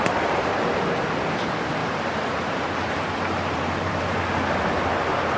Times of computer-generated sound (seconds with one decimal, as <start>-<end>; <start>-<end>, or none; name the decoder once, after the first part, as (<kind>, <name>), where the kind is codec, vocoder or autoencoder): 1.8-4.0 (vocoder, BigVGAN v2)